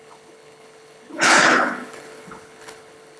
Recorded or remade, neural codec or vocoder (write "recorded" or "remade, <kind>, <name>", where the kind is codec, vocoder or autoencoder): remade, codec, HILCodec